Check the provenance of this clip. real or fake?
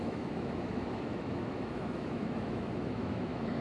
fake